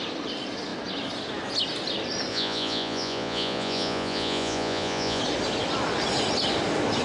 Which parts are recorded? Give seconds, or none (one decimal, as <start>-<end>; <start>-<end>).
0.0-2.3; 5.2-7.0